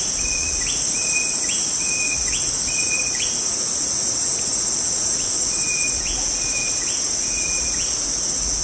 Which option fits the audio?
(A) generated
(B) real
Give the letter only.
A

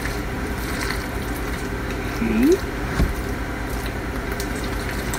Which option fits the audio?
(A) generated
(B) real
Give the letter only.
A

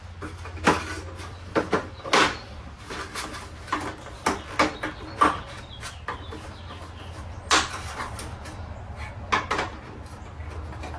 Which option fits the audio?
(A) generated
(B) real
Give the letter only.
B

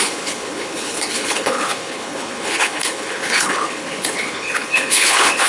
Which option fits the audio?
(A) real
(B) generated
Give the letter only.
B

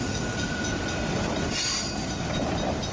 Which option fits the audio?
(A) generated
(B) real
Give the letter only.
B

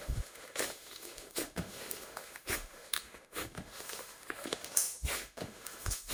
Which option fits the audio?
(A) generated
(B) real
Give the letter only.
A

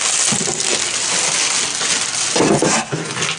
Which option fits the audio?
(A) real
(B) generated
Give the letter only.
A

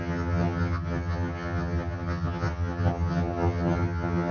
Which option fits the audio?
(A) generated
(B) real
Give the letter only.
A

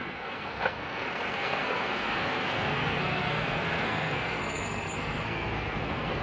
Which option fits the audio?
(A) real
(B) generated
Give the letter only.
B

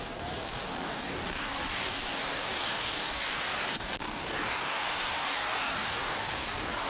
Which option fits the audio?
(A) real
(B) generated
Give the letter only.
B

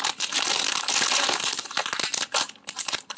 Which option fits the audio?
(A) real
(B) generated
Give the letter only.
A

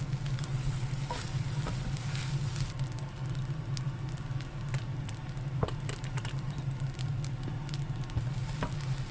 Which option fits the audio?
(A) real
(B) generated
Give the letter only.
A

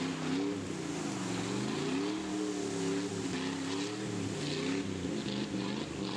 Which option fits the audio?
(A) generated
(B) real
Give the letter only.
B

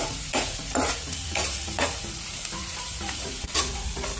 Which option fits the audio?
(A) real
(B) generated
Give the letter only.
B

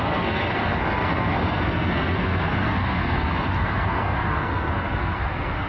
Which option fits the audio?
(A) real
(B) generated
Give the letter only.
B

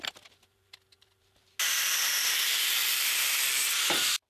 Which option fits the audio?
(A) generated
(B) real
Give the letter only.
B